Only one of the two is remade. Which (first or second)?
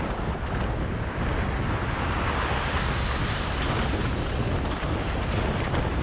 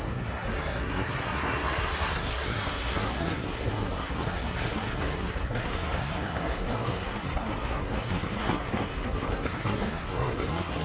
second